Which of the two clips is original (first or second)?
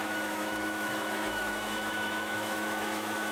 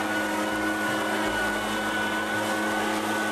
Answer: second